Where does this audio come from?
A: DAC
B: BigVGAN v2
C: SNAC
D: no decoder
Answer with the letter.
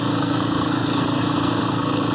C